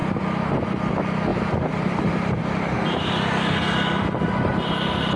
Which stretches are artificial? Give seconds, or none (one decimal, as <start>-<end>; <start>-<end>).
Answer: 1.3-3.0

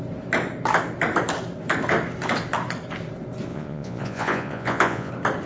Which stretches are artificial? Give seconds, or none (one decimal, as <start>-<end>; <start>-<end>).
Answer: 3.5-5.1

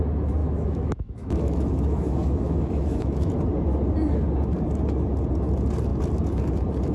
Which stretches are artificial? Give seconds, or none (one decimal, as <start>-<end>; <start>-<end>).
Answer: 0.4-3.3

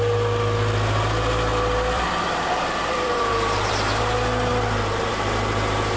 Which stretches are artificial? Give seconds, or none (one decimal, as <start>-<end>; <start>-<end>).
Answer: 1.5-3.7

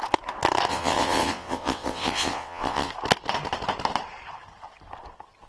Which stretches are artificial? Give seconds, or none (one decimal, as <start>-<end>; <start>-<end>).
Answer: 0.7-2.9

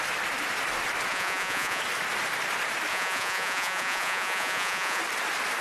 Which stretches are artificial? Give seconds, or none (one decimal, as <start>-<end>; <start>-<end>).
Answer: 1.1-1.8; 2.9-5.0

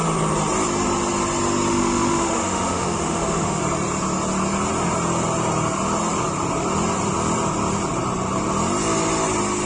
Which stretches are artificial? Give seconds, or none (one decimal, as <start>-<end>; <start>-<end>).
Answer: 1.7-3.6